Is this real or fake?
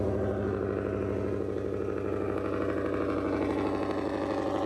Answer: real